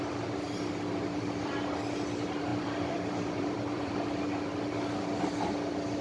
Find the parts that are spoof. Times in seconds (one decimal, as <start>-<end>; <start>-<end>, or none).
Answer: 2.5-3.9

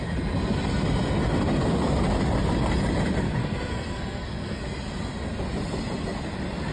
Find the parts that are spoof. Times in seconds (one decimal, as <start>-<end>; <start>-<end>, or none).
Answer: 3.4-4.6

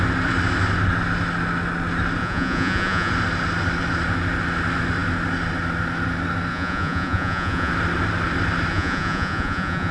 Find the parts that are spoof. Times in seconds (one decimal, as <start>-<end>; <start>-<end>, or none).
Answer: 2.2-3.1; 6.5-7.7; 8.7-9.9

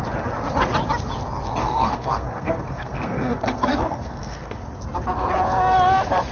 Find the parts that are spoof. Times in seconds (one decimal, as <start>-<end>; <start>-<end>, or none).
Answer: 1.6-4.7

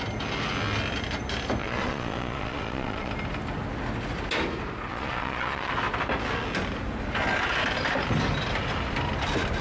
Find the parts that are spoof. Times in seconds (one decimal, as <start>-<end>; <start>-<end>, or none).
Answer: 1.6-3.1; 4.9-5.7

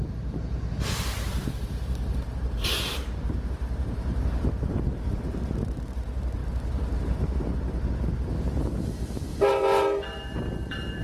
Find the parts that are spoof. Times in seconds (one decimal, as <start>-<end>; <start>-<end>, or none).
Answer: 0.0-11.0